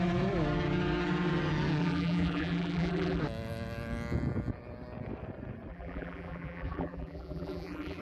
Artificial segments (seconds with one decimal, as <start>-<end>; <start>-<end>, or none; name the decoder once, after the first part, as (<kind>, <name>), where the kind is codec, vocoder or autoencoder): 1.8-3.2 (vocoder, BigVGAN v2); 5.7-8.0